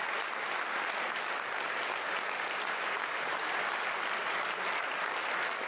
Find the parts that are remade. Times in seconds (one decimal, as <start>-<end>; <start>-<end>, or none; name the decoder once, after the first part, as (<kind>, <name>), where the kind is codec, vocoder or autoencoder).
none